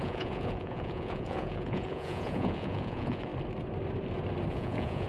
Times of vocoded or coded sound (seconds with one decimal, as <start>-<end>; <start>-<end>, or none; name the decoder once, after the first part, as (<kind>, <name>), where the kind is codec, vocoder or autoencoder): 0.0-3.3 (vocoder, Vocos); 4.5-5.1